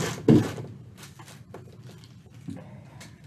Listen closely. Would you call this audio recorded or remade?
recorded